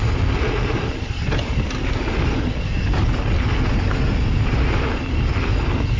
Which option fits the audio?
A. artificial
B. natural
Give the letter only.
B